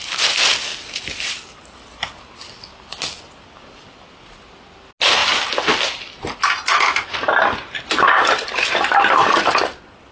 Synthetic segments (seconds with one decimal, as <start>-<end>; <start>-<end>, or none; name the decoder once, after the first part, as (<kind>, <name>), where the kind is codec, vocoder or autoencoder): none